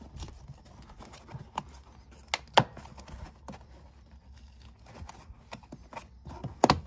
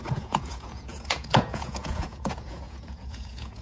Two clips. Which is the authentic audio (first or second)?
first